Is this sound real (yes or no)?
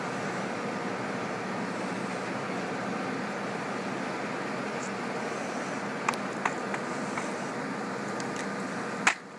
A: yes